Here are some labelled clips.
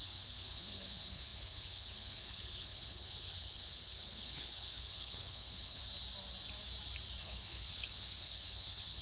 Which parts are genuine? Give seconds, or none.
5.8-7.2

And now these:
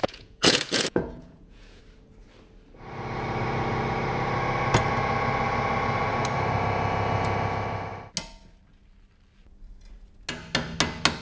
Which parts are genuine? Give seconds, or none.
1.8-11.2

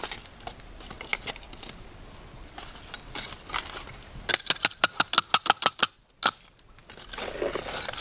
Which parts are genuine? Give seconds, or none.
0.0-8.0

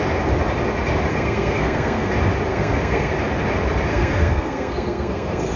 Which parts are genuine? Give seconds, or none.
0.0-1.1; 2.1-2.5; 3.1-3.9

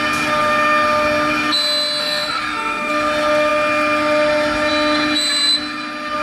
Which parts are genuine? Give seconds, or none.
0.0-2.0; 2.9-6.2

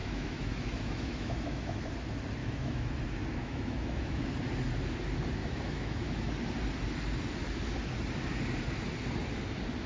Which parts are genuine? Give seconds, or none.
1.9-2.4; 3.0-3.4; 4.3-5.4; 6.3-9.9

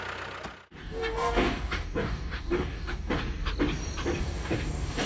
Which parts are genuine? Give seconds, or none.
0.0-0.8; 3.2-4.2

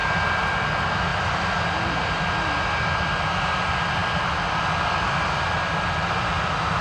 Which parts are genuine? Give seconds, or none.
0.0-1.1; 2.0-6.8